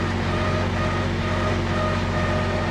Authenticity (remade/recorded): recorded